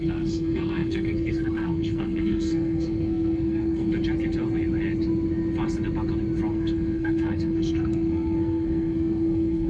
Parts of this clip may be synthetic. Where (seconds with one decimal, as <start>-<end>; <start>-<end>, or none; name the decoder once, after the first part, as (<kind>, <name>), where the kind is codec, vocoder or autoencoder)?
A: 0.0-3.9 (codec, SNAC); 6.5-9.7